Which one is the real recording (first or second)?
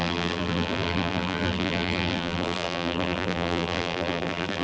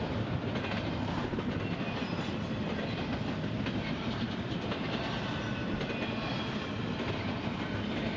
second